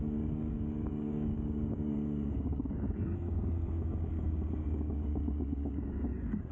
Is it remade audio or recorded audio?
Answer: remade